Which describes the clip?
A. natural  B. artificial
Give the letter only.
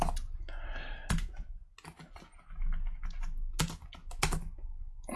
A